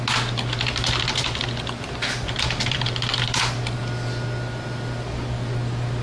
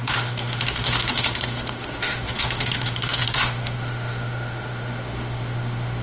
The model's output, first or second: second